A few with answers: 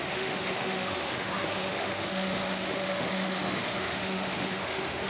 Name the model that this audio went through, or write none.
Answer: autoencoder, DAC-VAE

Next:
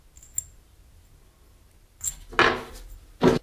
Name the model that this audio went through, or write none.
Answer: none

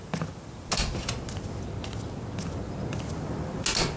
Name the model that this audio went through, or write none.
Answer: none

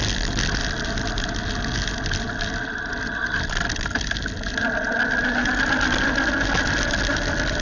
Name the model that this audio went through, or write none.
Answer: none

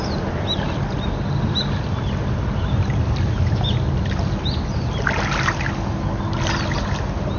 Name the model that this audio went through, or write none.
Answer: none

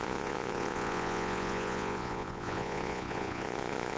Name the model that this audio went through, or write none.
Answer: vocoder, Vocos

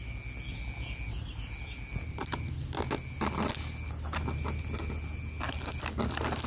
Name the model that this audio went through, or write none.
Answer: none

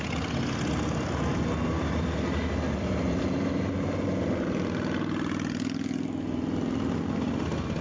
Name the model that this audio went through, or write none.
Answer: none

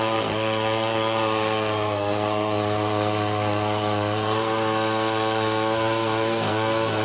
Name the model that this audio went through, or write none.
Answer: codec, SNAC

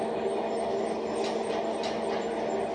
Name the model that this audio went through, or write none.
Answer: none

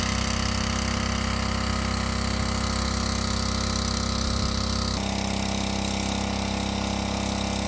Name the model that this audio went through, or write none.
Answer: none